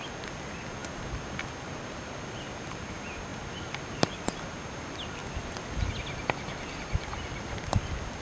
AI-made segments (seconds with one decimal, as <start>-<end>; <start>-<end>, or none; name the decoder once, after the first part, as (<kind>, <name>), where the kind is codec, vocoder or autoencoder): none